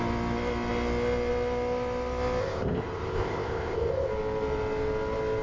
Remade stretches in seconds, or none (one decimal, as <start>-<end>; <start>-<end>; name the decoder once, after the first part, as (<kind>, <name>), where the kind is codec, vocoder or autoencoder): 2.4-4.1 (codec, ZipCodec)